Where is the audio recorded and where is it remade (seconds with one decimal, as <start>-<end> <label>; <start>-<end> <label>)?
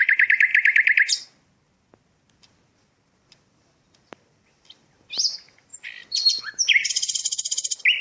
0.0-8.0 recorded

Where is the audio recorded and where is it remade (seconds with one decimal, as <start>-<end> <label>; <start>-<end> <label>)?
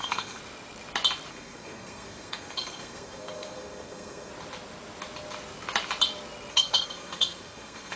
0.0-0.4 remade; 0.4-1.3 recorded; 1.3-4.3 remade; 4.3-6.5 recorded; 6.5-8.0 remade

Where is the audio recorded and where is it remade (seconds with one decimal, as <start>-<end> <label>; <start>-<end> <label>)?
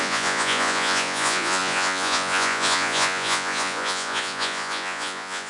0.0-5.5 remade